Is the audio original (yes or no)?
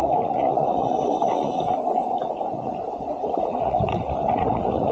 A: no